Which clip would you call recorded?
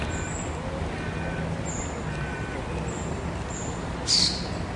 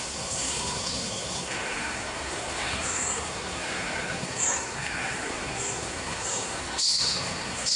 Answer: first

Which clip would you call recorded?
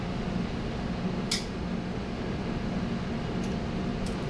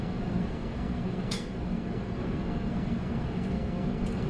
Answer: first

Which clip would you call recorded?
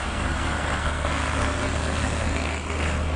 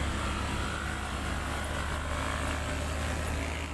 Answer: second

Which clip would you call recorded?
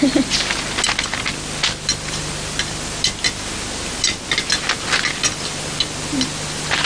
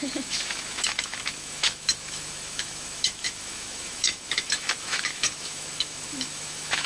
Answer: first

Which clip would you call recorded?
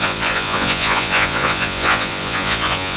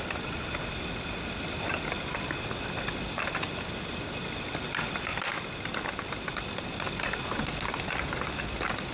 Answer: second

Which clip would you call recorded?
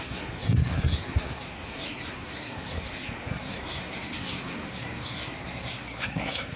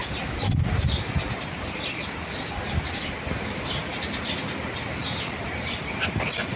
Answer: second